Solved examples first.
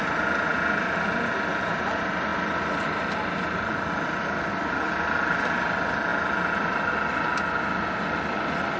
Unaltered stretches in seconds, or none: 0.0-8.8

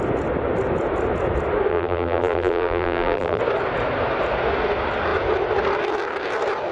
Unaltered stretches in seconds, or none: 0.0-1.7; 3.4-6.7

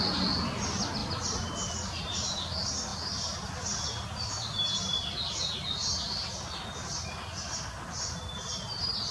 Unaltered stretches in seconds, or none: 0.0-1.0; 2.1-9.1

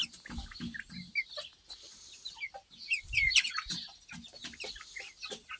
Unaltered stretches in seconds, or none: 0.0-5.6

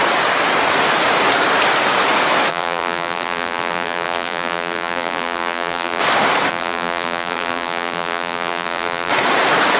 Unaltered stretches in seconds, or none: 0.0-2.5; 6.0-6.5; 9.1-9.8

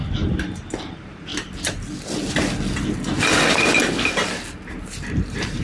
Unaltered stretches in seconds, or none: 0.0-0.8; 1.3-4.7